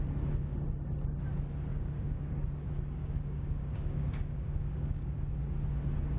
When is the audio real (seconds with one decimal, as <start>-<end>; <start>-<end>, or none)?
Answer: 0.0-1.7; 2.3-3.0; 5.2-6.2